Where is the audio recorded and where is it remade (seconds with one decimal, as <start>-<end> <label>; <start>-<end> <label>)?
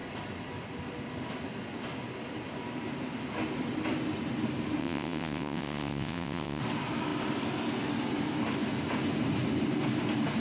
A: 0.0-4.8 recorded; 4.8-6.6 remade; 6.6-10.4 recorded